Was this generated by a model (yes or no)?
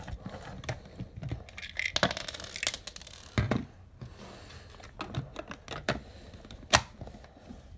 no